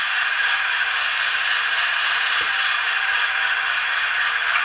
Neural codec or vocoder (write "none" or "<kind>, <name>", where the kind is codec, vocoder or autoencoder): vocoder, BigVGAN v2